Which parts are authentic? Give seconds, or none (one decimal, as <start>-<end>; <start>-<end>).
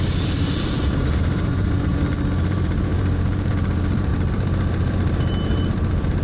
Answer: 1.9-2.4